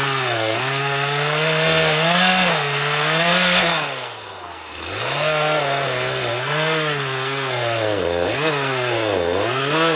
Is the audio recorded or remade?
remade